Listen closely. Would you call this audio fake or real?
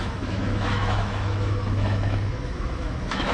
fake